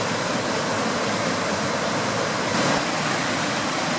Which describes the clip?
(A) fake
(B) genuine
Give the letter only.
B